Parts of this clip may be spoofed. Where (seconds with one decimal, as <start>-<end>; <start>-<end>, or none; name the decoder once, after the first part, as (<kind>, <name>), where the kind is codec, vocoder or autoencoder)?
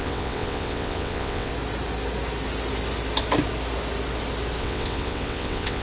0.0-1.5 (vocoder, WaveNeXt); 4.6-5.8